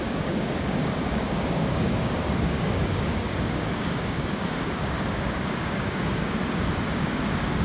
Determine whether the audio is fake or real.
fake